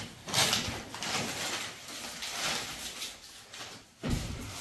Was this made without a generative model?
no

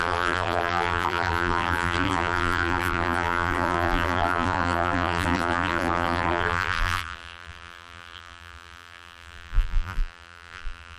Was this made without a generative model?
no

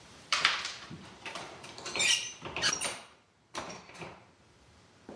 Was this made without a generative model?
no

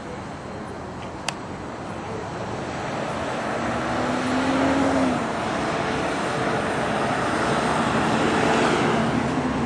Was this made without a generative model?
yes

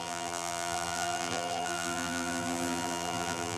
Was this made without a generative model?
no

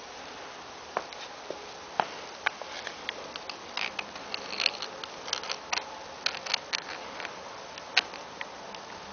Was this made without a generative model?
yes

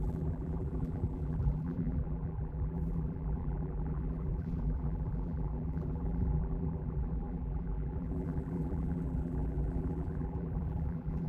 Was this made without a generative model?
no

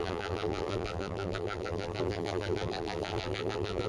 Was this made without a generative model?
no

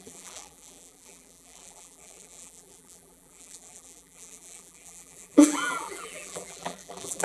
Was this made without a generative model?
no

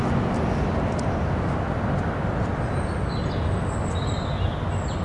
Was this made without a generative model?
yes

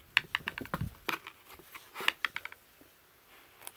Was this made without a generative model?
yes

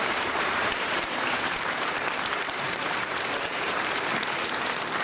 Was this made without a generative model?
no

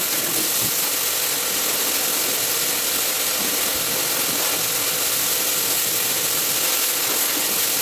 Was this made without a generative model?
yes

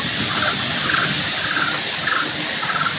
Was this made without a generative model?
yes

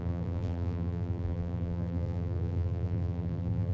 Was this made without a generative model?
no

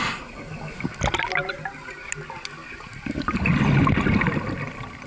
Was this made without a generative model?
yes